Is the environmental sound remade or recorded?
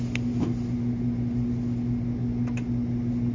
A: recorded